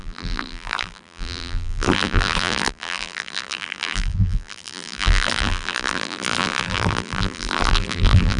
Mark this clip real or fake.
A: fake